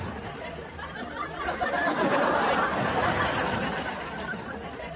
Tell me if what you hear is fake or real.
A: real